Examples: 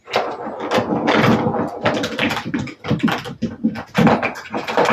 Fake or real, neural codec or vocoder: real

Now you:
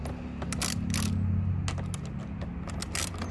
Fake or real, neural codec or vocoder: real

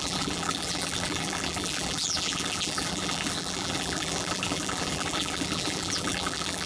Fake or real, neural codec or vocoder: fake, vocoder, BigVGAN v2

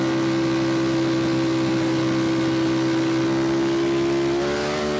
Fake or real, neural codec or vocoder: real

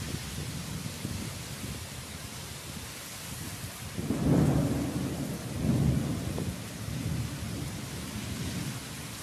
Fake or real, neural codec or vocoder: real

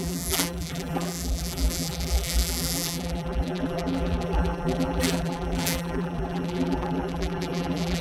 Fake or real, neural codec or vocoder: fake, vocoder, BigVGAN v2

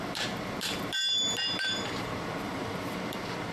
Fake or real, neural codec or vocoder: fake, vocoder, BigVGAN v2